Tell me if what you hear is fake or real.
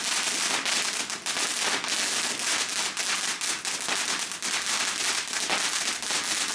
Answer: real